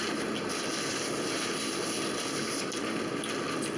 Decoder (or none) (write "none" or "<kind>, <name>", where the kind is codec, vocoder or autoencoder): none